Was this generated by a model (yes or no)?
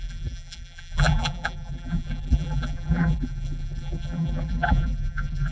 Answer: yes